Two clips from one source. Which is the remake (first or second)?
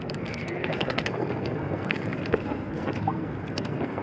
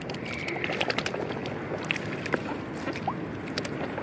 first